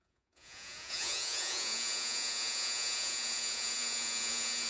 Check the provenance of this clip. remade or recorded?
remade